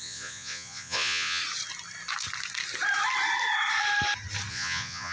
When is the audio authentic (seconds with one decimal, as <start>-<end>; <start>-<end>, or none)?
1.4-4.5